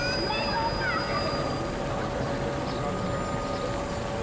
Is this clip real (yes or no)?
yes